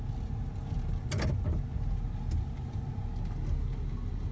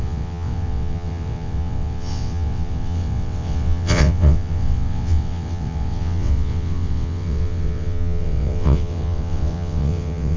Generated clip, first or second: second